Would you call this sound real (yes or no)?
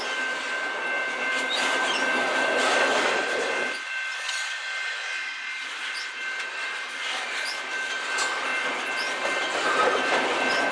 yes